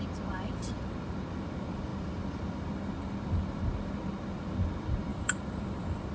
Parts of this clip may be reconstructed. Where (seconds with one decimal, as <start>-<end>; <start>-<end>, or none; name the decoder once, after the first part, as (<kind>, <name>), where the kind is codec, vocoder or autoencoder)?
5.1-6.1 (vocoder, BigVGAN v2)